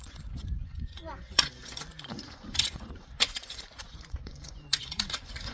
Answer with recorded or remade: remade